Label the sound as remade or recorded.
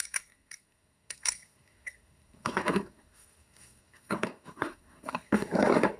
remade